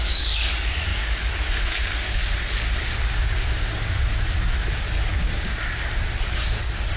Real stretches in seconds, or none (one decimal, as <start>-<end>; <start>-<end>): 2.2-4.7; 5.3-6.2